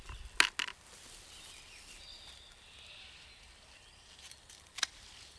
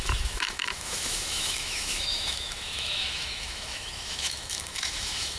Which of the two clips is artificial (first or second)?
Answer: second